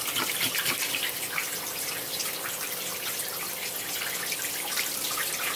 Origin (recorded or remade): remade